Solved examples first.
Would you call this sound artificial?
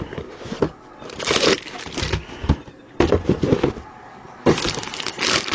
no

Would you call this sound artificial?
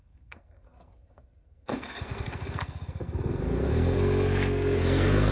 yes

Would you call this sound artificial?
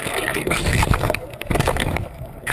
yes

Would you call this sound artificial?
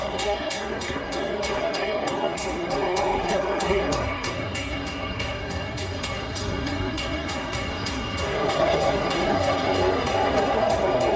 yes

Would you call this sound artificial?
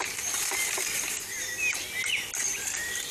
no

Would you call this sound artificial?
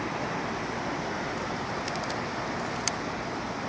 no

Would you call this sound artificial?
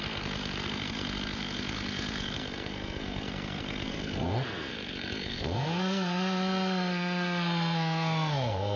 yes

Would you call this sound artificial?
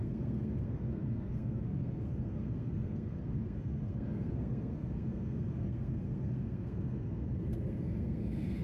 yes